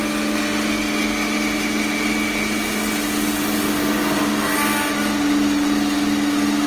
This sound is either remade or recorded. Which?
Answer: recorded